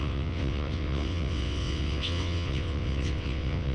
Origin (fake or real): fake